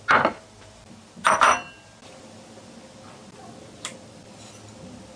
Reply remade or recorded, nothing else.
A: recorded